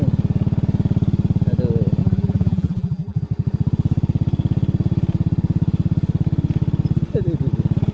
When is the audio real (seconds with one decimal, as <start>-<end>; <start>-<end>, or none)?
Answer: 0.0-2.0; 3.2-7.9